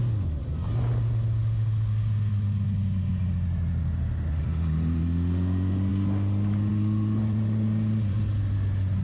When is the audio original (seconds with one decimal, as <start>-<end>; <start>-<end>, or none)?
0.0-9.0